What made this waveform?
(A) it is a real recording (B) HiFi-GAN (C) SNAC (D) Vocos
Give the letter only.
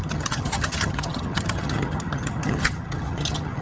B